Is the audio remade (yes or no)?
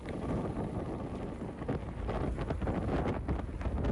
no